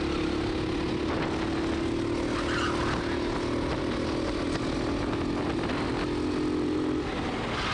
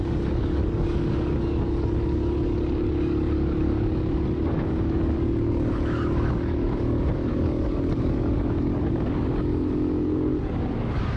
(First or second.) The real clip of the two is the first